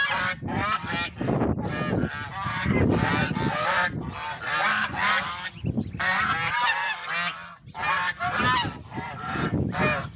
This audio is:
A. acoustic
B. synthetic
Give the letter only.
A